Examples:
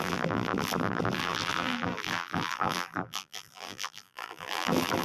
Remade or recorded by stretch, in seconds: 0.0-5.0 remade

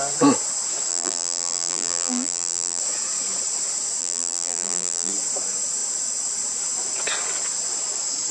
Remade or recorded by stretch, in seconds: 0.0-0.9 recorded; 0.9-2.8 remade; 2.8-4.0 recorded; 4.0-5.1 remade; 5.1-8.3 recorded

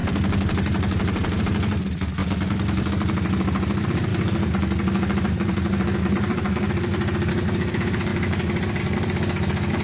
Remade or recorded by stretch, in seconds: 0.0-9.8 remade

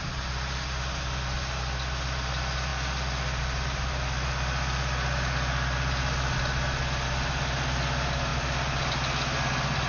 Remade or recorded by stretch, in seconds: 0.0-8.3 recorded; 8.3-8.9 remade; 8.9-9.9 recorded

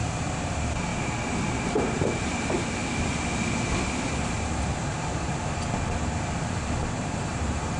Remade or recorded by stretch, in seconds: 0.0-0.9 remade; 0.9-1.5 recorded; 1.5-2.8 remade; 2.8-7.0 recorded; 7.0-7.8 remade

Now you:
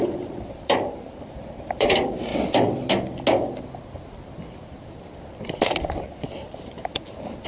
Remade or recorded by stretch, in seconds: 0.0-2.3 remade; 2.3-6.0 recorded; 6.0-7.5 remade

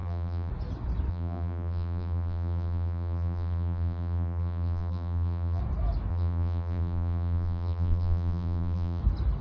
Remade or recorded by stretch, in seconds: 0.0-0.5 remade; 0.5-1.1 recorded; 1.1-5.6 remade; 5.6-6.1 recorded; 6.1-9.0 remade; 9.0-9.4 recorded